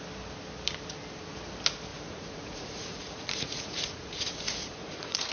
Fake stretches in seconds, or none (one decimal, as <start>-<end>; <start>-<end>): 1.9-5.3